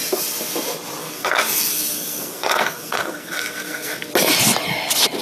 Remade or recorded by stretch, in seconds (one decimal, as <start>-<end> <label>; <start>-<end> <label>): 0.0-1.0 recorded; 1.0-4.1 remade; 4.1-5.2 recorded